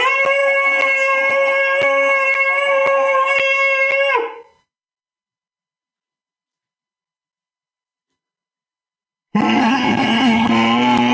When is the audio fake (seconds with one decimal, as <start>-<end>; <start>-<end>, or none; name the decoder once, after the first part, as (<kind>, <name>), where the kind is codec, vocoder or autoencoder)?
9.6-10.5 (codec, SNAC)